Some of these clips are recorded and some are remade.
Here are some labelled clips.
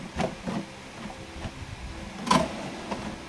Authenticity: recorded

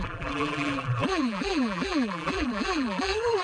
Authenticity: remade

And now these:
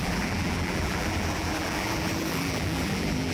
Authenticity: remade